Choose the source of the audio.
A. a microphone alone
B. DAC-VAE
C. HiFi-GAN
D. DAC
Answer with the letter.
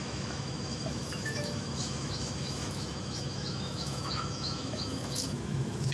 B